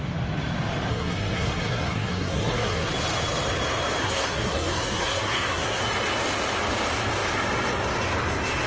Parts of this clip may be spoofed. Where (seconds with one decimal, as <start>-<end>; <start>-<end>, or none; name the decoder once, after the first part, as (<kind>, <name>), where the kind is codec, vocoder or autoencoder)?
0.9-2.9 (codec, SNAC); 4.0-5.8